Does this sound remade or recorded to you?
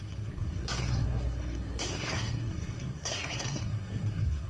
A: remade